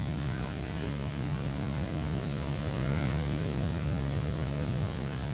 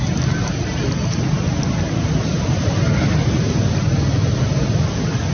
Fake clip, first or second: first